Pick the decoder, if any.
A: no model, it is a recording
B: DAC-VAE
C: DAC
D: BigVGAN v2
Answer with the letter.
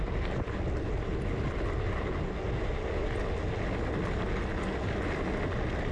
A